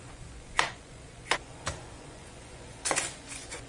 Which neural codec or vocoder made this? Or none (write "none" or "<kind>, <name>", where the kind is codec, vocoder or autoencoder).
vocoder, Vocos